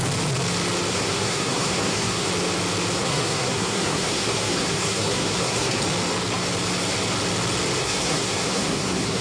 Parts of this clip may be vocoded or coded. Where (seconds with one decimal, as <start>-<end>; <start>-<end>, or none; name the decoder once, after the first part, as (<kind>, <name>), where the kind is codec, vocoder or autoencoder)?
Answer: 0.9-2.3 (codec, SNAC); 3.0-5.8; 7.8-9.2